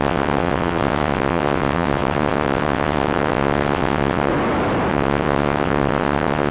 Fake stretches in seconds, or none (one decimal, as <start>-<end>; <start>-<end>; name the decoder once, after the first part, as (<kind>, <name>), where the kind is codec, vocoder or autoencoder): 0.0-4.3 (vocoder, WaveNeXt); 4.9-6.5